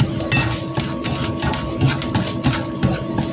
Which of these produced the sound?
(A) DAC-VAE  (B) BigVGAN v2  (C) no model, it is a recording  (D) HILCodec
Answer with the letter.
C